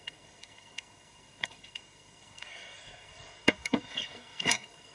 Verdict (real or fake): fake